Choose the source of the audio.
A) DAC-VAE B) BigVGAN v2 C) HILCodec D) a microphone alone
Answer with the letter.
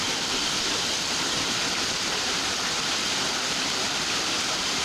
B